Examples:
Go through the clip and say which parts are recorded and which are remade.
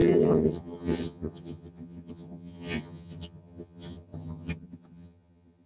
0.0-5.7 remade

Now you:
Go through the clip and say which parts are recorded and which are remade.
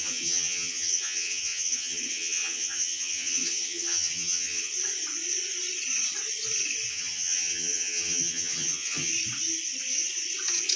0.0-4.7 remade; 4.7-6.9 recorded; 6.9-9.1 remade; 9.1-10.8 recorded